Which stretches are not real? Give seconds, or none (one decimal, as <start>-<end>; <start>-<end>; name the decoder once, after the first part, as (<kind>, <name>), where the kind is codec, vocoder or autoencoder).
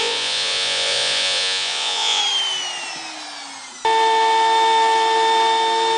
0.0-2.2 (vocoder, Vocos)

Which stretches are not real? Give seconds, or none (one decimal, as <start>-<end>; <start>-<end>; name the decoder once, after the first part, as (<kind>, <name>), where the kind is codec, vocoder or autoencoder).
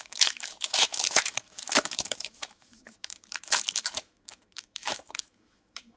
0.0-6.0 (autoencoder, DAC-VAE)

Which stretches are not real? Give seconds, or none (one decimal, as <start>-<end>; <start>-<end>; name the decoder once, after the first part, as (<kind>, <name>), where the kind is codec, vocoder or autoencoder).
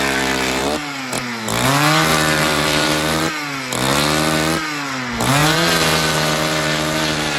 2.1-3.3 (vocoder, BigVGAN v2); 5.4-7.4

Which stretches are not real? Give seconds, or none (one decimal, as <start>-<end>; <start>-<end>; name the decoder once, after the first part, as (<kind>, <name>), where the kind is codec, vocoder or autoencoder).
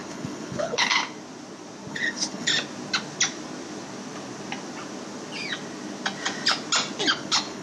0.0-1.0 (codec, HILCodec); 1.9-2.5; 7.1-7.6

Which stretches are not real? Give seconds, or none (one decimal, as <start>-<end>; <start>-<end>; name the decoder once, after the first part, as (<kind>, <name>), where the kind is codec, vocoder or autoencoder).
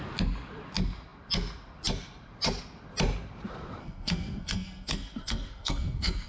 3.8-6.3 (codec, SNAC)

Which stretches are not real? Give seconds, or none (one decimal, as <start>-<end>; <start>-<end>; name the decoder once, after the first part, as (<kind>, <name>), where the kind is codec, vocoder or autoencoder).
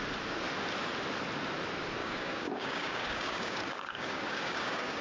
2.0-5.0 (codec, DAC)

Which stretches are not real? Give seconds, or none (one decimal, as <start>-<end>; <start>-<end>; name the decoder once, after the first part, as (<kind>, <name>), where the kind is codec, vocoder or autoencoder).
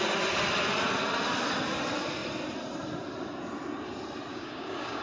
4.3-5.0 (codec, DAC)